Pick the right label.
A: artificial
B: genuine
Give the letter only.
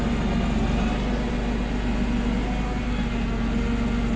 B